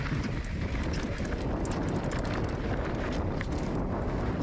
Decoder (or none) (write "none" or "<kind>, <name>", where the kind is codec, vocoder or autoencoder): none